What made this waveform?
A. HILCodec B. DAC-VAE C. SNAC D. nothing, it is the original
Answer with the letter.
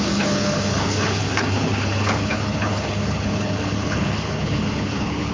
A